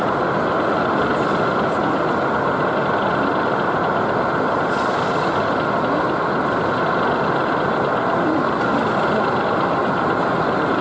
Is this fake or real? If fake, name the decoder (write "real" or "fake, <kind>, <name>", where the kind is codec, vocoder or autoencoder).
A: real